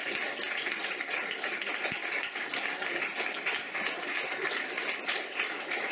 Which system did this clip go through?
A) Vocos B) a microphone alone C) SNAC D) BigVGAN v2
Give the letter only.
B